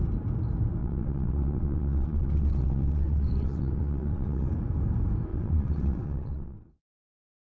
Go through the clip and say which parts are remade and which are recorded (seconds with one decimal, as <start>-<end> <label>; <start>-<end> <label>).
0.0-0.8 recorded; 0.8-4.5 remade; 4.5-5.3 recorded; 5.3-7.4 remade